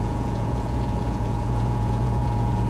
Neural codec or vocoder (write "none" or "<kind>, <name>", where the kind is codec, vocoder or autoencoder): vocoder, Vocos